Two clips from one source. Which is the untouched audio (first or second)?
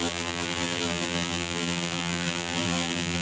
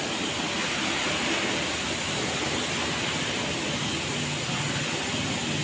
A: second